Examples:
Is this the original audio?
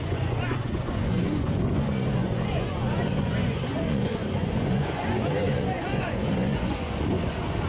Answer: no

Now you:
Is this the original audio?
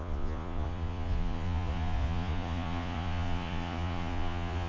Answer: no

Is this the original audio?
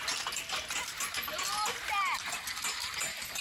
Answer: yes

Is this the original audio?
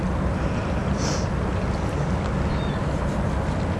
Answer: yes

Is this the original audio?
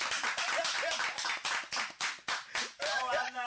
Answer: yes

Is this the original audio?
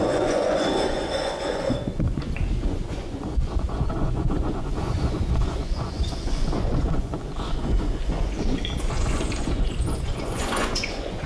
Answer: no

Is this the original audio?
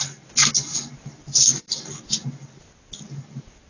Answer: yes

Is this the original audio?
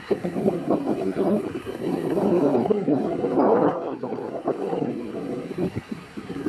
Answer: no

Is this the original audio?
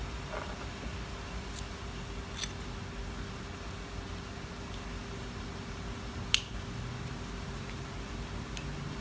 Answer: yes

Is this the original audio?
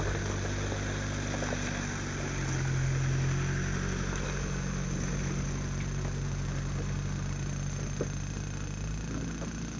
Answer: yes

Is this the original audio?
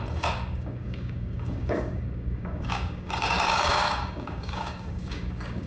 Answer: no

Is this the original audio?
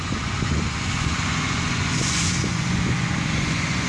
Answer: no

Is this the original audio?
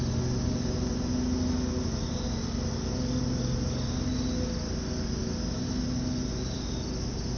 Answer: yes